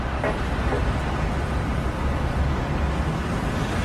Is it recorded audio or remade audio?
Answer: recorded